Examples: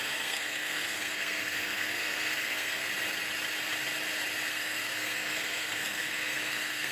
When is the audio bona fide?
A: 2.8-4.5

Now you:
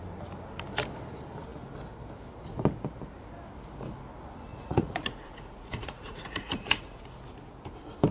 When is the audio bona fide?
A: 0.0-4.5; 7.0-8.1

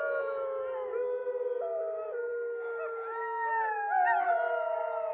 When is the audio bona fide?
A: 0.0-1.2; 1.8-5.1

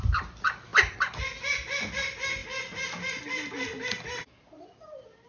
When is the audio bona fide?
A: 0.0-5.3

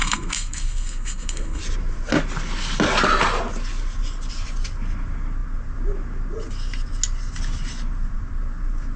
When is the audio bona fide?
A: 1.6-9.0

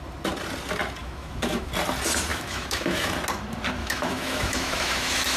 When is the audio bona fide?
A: 0.0-1.0; 1.7-2.3; 3.1-3.8